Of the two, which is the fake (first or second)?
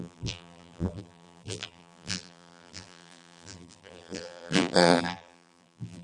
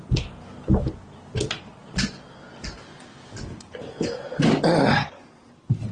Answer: first